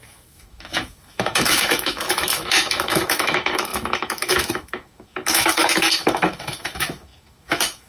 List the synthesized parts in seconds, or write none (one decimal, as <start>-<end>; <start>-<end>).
0.0-7.9